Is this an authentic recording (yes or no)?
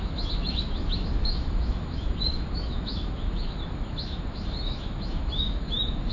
no